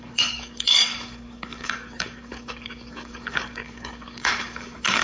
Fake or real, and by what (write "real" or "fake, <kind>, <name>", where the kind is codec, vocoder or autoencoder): fake, codec, DAC